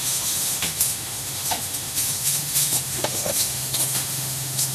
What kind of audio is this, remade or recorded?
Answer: remade